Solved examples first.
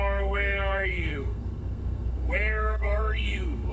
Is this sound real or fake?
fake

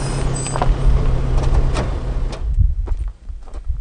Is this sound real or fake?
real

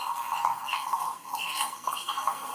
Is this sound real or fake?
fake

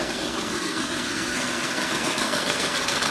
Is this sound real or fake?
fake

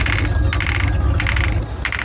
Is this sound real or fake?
real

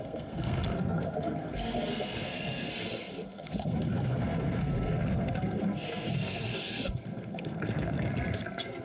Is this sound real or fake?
fake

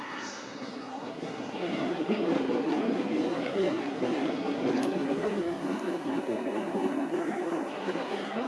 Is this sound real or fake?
fake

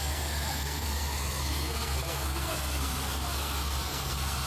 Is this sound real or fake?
fake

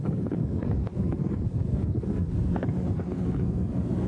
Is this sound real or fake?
fake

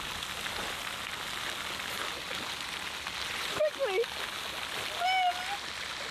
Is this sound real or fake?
real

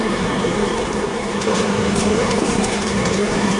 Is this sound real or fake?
fake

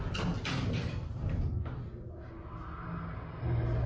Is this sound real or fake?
real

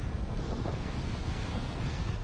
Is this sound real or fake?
fake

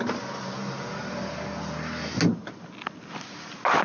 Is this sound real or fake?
real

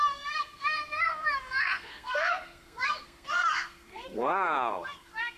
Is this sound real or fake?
fake